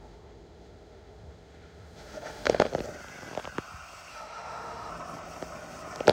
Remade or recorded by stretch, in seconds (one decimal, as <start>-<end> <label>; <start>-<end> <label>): 0.0-2.7 remade; 2.7-4.1 recorded; 4.1-4.9 remade; 4.9-6.1 recorded